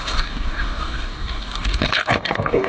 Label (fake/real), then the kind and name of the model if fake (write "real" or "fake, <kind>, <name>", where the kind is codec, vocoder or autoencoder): fake, codec, DAC